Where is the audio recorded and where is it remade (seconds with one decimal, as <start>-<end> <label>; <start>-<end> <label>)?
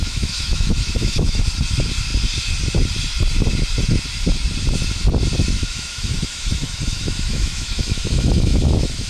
0.0-1.4 remade; 1.4-5.6 recorded; 5.6-9.1 remade